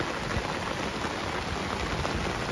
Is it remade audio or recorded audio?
recorded